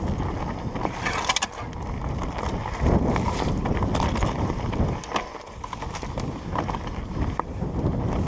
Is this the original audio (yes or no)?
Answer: yes